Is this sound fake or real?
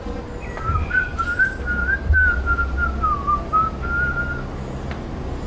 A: real